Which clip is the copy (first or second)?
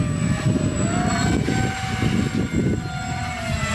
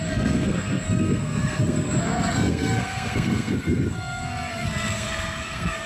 second